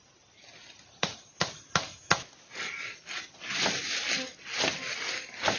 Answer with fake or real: real